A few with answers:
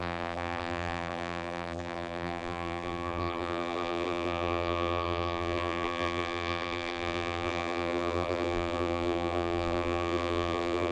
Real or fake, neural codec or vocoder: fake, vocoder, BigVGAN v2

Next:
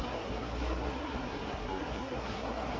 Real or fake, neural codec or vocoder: fake, codec, SNAC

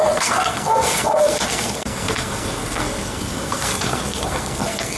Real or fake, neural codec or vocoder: fake, codec, SNAC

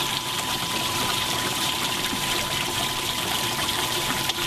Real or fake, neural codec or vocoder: fake, vocoder, BigVGAN v2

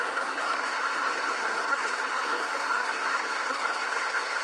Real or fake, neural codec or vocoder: fake, codec, SNAC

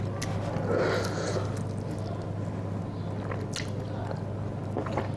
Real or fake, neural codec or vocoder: real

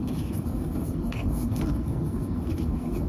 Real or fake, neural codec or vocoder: fake, codec, SNAC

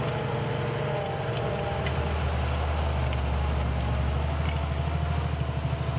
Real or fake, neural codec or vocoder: real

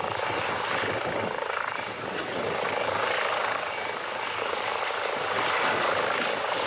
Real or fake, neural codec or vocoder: real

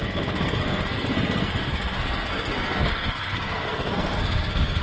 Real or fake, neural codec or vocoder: fake, codec, SNAC